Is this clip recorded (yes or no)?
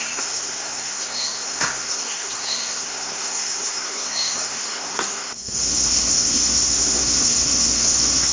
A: no